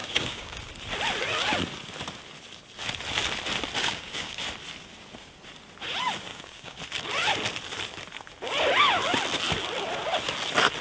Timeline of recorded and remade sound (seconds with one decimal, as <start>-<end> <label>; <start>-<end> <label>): 0.0-0.7 remade; 0.7-3.8 recorded; 3.8-4.4 remade; 4.4-6.3 recorded; 6.3-6.8 remade; 6.8-10.8 recorded